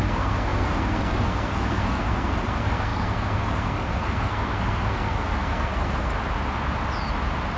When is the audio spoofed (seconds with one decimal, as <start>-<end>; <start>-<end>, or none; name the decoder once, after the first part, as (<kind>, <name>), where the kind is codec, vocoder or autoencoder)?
0.0-6.1 (codec, SNAC)

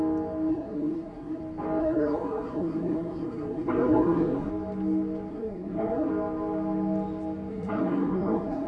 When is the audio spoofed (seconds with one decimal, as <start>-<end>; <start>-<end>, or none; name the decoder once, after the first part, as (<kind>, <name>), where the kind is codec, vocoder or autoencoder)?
0.5-1.4 (codec, SNAC); 1.8-4.5; 5.3-6.1; 7.5-8.7

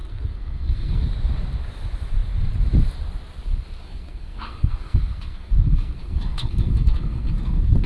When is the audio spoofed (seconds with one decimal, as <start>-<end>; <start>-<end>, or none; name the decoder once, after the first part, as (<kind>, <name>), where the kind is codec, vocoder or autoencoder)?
0.0-1.0 (codec, SNAC); 3.8-7.9

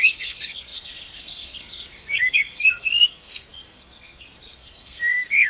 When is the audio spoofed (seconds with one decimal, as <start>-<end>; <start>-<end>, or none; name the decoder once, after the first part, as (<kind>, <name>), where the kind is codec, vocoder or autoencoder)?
0.0-5.5 (codec, SNAC)

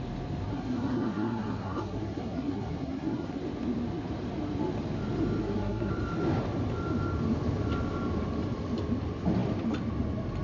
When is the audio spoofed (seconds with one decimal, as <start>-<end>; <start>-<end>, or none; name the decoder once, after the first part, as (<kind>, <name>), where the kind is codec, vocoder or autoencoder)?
0.5-3.4 (codec, SNAC); 5.4-5.9

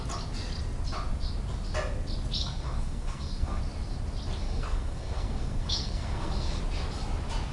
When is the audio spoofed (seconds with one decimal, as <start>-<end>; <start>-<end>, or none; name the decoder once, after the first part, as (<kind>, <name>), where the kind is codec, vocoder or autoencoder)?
2.4-3.6 (codec, SNAC); 4.4-6.6

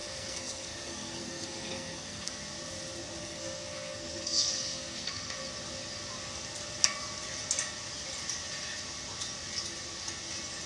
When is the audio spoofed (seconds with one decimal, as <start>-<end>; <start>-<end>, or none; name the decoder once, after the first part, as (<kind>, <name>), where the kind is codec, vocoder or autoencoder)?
0.0-2.4 (codec, SNAC); 3.2-5.4

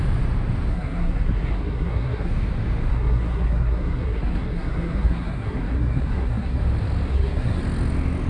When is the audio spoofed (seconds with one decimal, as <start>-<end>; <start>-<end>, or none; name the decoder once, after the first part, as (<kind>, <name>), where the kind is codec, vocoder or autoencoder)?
0.7-2.3 (codec, SNAC); 2.9-6.6; 7.1-7.6